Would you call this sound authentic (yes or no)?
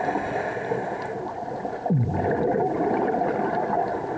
yes